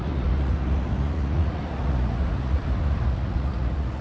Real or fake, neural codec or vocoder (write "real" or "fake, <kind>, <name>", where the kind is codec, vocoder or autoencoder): fake, vocoder, Vocos